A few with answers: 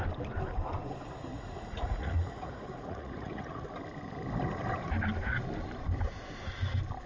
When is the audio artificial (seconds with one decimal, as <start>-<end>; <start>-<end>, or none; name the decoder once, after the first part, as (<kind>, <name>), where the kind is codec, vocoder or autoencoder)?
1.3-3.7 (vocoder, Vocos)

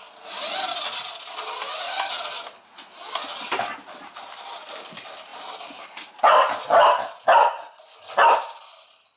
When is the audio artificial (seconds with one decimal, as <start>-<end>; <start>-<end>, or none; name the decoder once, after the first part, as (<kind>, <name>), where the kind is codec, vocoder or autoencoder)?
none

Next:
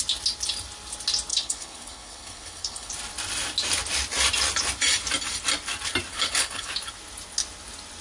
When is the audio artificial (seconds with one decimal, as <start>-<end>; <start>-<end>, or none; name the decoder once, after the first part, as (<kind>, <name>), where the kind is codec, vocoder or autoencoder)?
1.3-2.9 (codec, HILCodec); 6.1-6.7

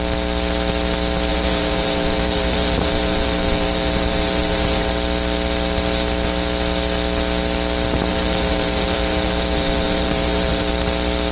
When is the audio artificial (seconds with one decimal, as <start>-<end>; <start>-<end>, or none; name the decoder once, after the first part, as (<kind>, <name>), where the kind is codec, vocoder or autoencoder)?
1.3-4.9 (vocoder, BigVGAN v2); 8.1-10.7

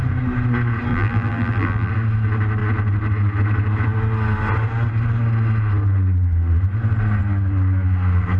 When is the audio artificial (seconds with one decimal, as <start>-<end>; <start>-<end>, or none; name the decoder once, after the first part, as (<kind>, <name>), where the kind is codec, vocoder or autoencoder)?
0.9-1.9 (vocoder, BigVGAN v2)